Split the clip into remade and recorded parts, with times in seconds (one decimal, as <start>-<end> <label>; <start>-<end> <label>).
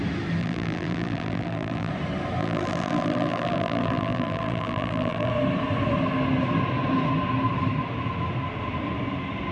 0.0-0.4 recorded; 0.4-1.9 remade; 1.9-2.4 recorded; 2.4-5.3 remade; 5.3-9.5 recorded